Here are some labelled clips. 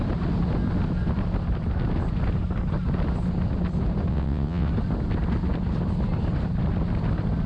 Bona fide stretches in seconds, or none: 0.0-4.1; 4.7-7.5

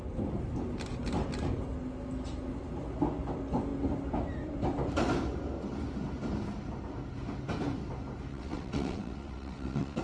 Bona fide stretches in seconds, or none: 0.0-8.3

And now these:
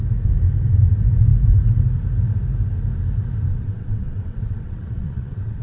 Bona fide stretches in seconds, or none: 0.0-3.5

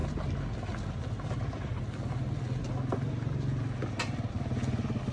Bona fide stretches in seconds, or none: 0.0-5.1